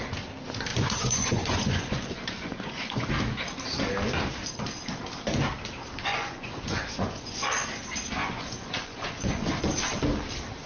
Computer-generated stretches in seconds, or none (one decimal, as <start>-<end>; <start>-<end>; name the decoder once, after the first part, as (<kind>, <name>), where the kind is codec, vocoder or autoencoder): 0.7-3.1 (vocoder, Vocos); 6.1-7.5; 8.2-9.5